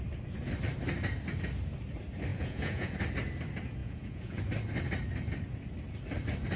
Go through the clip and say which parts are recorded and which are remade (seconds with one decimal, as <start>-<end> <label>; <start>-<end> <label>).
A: 0.0-2.3 recorded; 2.3-2.9 remade; 2.9-3.8 recorded; 3.8-4.4 remade; 4.4-6.6 recorded